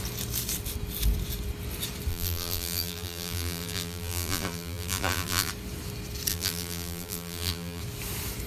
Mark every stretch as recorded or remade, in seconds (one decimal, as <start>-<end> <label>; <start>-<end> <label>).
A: 0.0-2.1 recorded; 2.1-5.5 remade; 5.5-6.3 recorded; 6.3-7.8 remade; 7.8-8.5 recorded